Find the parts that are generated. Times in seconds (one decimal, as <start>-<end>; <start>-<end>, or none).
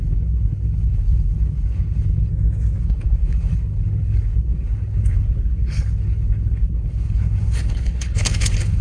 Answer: 0.0-2.3; 2.8-8.8